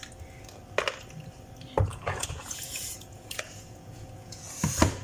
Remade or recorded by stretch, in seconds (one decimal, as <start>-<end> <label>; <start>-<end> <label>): 0.0-1.9 recorded; 1.9-4.6 remade; 4.6-5.0 recorded

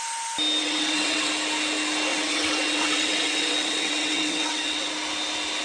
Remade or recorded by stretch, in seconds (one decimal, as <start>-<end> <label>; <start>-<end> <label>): 0.0-0.6 recorded; 0.6-1.3 remade; 1.3-2.1 recorded; 2.1-4.9 remade; 4.9-5.6 recorded